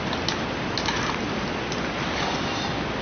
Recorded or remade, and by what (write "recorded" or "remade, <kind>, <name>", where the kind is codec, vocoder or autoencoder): recorded